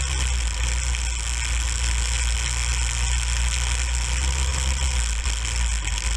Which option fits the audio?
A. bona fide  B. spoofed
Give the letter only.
A